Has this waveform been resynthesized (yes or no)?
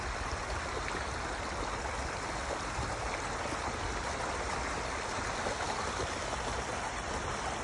no